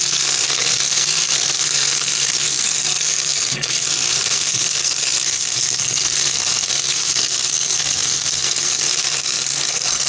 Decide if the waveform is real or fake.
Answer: fake